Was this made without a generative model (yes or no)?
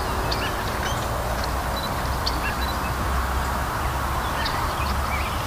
yes